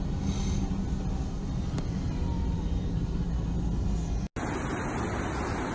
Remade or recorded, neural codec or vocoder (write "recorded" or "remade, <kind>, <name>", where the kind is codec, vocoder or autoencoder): recorded